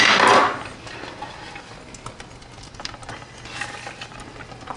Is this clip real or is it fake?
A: real